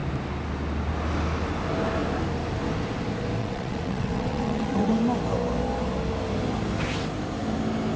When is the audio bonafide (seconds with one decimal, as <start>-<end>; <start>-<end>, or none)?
0.0-3.4; 4.9-8.0

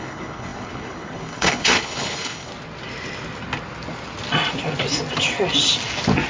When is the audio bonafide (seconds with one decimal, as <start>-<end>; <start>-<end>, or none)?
2.5-6.3

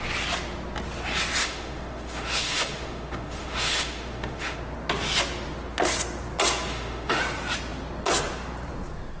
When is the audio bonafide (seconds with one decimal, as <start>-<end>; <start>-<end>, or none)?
0.0-1.4; 4.6-6.7; 7.2-9.2

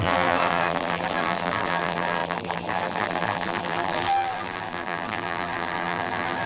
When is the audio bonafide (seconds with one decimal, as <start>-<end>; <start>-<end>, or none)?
none

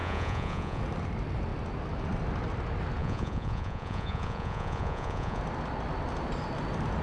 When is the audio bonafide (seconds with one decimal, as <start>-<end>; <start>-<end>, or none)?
0.8-3.0; 5.4-7.0

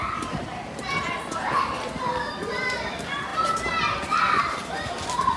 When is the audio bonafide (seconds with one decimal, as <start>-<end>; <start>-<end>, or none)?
0.0-5.4

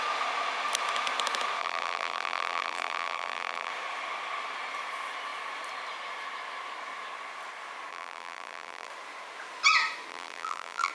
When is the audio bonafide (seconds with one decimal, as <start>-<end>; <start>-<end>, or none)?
0.0-1.6; 3.7-7.9; 8.9-10.1